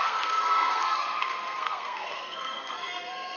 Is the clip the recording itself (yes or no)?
no